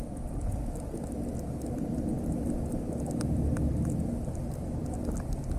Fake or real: real